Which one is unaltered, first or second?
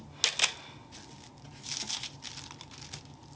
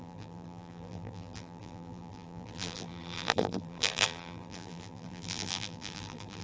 first